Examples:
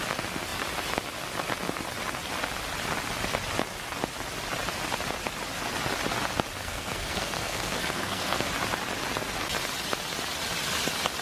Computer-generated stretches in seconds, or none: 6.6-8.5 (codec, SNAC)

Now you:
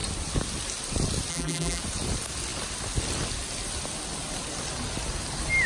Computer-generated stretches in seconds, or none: 1.3-1.8 (vocoder, BigVGAN v2)